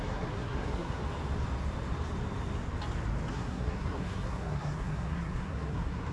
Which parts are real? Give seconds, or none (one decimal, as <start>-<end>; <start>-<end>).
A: 1.0-3.3